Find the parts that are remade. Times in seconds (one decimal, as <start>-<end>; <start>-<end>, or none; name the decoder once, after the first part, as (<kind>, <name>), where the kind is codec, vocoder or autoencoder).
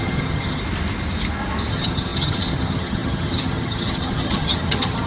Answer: 0.0-0.6 (vocoder, HiFi-GAN); 1.7-5.1